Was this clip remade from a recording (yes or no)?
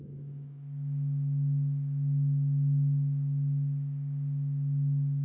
yes